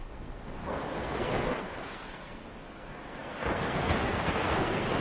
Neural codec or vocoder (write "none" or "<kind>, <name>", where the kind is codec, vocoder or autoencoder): codec, SNAC